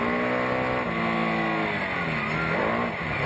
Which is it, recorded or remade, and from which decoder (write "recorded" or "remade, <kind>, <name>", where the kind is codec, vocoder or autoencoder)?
recorded